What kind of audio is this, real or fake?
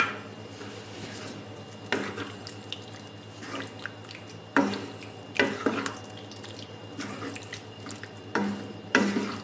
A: real